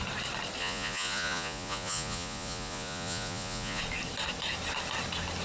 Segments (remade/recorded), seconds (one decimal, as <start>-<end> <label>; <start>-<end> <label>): 0.0-0.6 recorded; 0.6-3.8 remade; 3.8-5.4 recorded